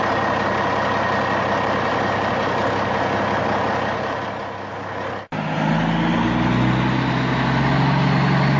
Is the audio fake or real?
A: real